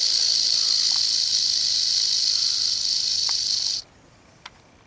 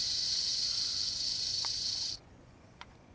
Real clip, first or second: first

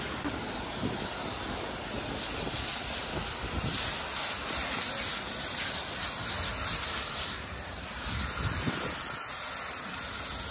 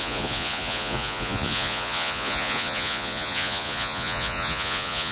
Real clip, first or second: first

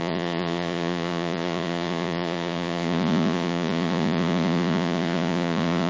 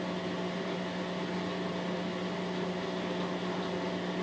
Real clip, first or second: second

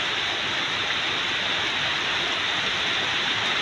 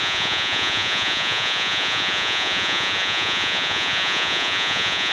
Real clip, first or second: first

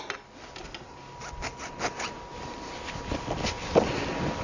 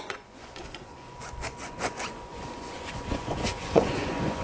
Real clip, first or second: first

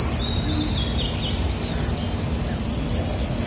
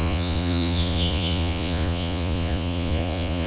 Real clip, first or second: first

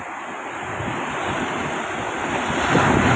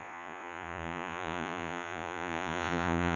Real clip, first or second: first